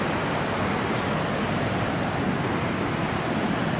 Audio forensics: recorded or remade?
recorded